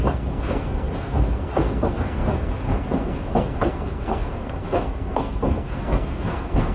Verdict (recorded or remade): remade